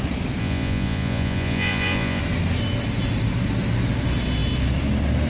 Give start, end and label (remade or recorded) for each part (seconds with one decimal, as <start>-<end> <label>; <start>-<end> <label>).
0.0-0.4 recorded; 0.4-2.2 remade; 2.2-5.3 recorded